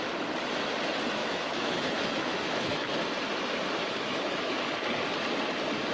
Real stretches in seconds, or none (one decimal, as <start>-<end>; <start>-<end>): 0.0-1.2; 2.9-3.8; 4.7-5.9